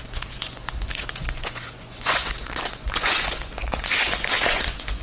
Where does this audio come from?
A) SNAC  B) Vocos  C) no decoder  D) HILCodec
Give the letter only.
B